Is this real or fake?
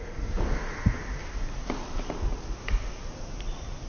real